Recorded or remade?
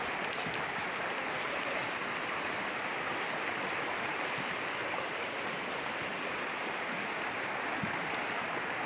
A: recorded